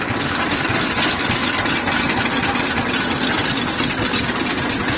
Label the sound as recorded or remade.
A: recorded